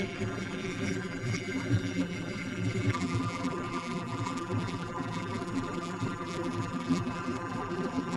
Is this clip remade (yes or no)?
yes